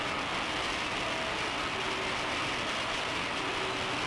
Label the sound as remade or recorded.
recorded